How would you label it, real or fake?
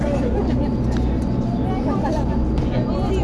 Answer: real